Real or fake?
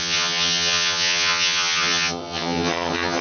fake